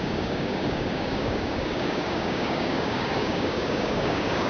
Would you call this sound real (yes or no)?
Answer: no